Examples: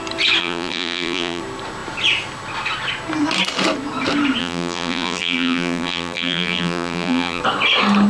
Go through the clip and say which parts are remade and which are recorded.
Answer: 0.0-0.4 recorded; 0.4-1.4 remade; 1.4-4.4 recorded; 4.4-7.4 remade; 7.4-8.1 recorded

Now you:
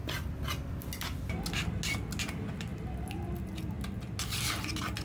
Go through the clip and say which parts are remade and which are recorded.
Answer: 0.0-5.0 recorded

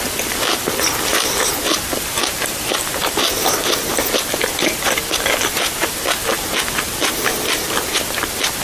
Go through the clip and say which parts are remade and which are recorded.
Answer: 0.0-1.1 recorded; 1.1-1.6 remade; 1.6-8.6 recorded

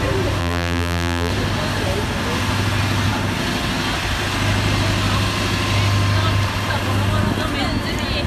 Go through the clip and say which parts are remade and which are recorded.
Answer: 0.0-0.4 recorded; 0.4-1.3 remade; 1.3-8.3 recorded

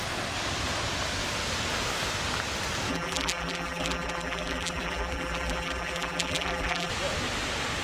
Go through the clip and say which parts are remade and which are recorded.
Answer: 0.0-2.9 recorded; 2.9-6.9 remade; 6.9-7.8 recorded

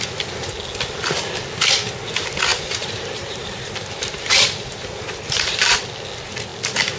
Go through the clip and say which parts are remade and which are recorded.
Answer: 0.0-2.5 recorded; 2.5-5.8 remade; 5.8-7.0 recorded

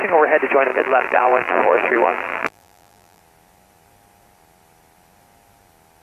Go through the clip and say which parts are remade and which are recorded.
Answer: 0.0-0.7 recorded; 0.7-3.2 remade; 3.2-6.0 recorded

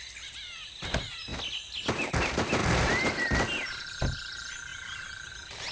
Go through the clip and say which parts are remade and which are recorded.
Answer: 0.0-1.3 remade; 1.3-2.2 recorded; 2.2-5.7 remade